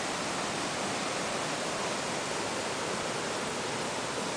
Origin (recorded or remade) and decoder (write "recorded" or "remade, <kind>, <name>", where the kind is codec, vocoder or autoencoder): recorded